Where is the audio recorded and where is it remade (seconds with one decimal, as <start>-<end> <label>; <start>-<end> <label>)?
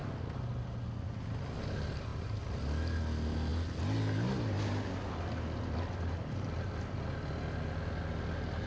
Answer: 0.0-8.7 recorded